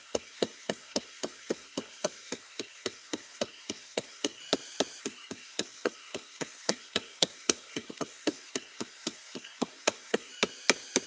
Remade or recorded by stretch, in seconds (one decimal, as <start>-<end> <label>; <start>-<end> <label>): 0.0-4.4 remade; 4.4-5.0 recorded; 5.0-10.3 remade; 10.3-11.1 recorded